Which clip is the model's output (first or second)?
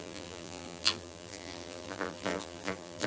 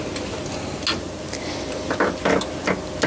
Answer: first